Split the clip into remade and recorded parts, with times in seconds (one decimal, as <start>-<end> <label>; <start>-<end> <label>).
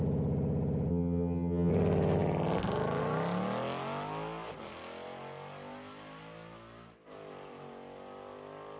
0.0-0.9 recorded; 0.9-1.7 remade; 1.7-8.8 recorded